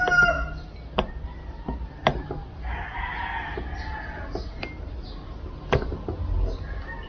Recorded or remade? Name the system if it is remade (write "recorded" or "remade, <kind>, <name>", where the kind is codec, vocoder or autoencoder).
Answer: recorded